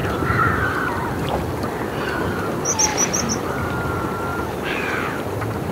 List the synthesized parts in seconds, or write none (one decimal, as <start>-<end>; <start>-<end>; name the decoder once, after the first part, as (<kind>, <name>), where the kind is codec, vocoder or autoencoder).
2.9-3.7 (vocoder, BigVGAN v2); 4.3-5.2